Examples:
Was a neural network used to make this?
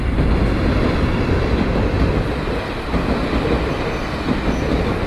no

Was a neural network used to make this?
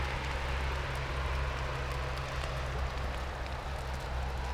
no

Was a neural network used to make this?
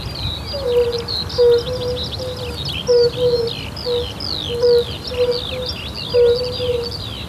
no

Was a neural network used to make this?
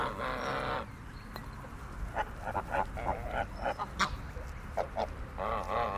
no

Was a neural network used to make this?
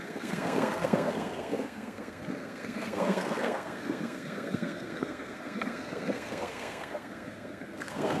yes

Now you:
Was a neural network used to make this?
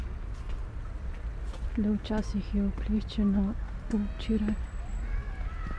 no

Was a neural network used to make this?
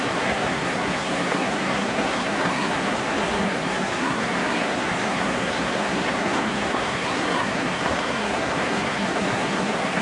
yes